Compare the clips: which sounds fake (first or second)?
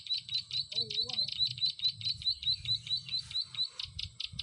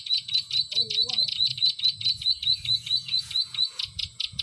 second